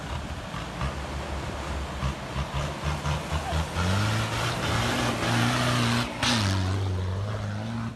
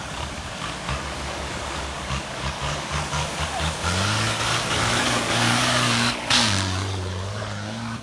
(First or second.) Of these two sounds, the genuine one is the first